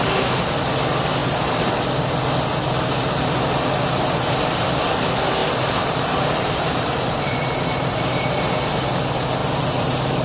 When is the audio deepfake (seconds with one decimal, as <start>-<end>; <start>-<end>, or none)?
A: 1.2-1.7; 5.4-8.5; 9.4-10.2